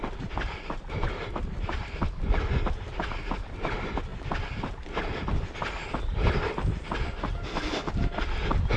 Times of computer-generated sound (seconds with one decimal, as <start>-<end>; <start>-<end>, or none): none